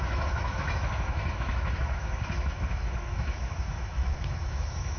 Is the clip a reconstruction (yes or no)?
yes